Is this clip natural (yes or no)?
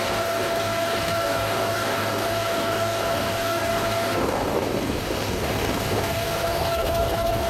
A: no